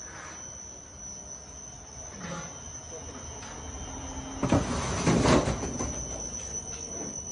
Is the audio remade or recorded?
recorded